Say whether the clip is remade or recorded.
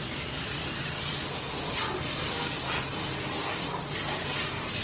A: recorded